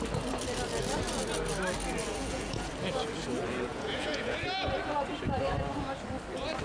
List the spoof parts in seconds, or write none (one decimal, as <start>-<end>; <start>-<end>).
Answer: 2.1-2.7; 3.7-4.4